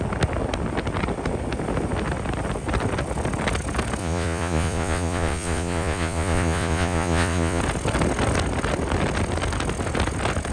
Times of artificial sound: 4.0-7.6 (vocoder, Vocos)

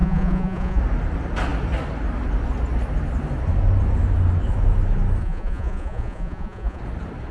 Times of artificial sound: 0.0-0.8 (vocoder, Vocos); 5.2-6.8

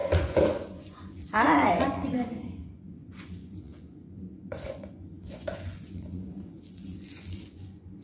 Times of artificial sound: 0.0-8.0 (vocoder, Vocos)

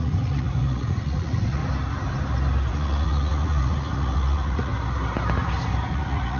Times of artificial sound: 0.0-1.6 (vocoder, Vocos); 2.7-4.7; 5.9-6.4

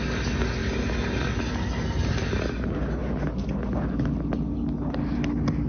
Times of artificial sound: none

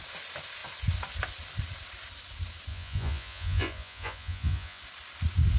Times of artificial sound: 2.7-4.8 (vocoder, Vocos)

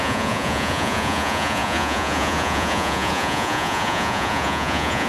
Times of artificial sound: 0.0-5.1 (vocoder, Vocos)